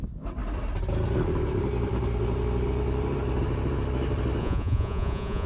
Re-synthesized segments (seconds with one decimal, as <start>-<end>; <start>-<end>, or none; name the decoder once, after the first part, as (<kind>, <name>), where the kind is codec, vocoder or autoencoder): 4.4-5.5 (vocoder, Vocos)